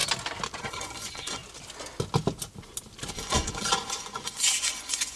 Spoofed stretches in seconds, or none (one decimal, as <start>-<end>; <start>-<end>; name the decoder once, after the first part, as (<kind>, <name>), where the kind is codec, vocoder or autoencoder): 0.6-1.4 (vocoder, Vocos); 3.1-5.2